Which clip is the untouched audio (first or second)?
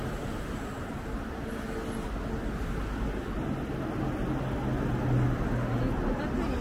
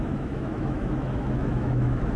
first